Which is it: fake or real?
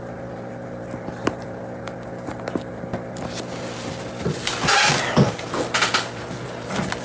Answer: real